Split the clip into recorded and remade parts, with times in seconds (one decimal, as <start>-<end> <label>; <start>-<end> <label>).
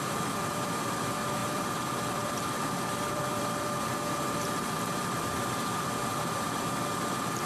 0.0-7.5 remade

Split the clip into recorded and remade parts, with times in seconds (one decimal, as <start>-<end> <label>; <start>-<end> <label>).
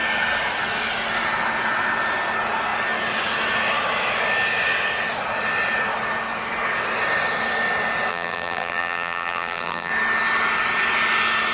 0.0-8.1 recorded; 8.1-9.9 remade; 9.9-11.5 recorded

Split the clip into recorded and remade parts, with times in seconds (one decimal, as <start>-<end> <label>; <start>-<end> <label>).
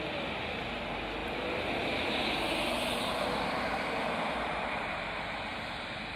0.0-1.2 recorded; 1.2-4.9 remade; 4.9-5.5 recorded; 5.5-6.2 remade